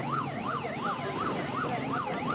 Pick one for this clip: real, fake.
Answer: real